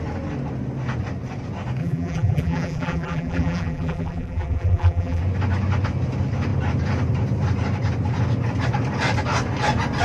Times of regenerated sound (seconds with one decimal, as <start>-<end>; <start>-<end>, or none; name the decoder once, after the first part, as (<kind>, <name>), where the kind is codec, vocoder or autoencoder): 1.8-5.2 (vocoder, BigVGAN v2)